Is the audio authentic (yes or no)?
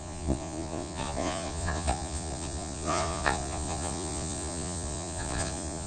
no